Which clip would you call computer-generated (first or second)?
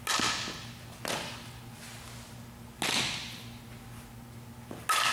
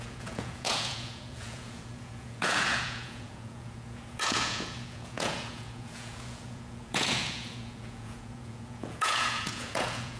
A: second